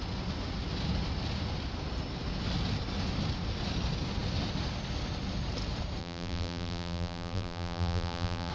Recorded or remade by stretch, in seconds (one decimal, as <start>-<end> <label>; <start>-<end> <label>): 0.0-6.0 recorded; 6.0-8.5 remade